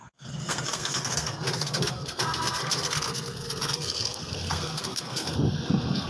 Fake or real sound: fake